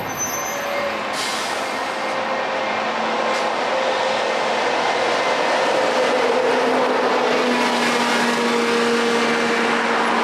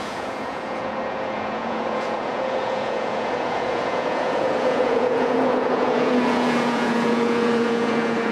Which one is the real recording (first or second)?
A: first